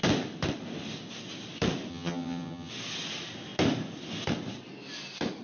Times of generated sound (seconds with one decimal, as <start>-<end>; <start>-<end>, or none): 1.9-2.7